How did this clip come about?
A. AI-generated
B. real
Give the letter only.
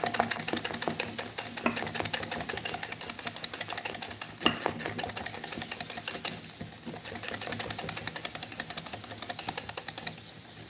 B